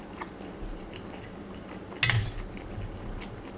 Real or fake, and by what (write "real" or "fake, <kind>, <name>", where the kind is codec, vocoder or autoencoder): real